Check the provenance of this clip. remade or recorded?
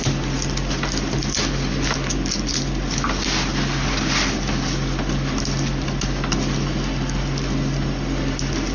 recorded